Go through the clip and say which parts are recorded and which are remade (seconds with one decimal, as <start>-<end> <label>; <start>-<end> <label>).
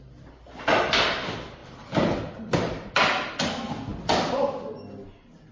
0.0-5.5 recorded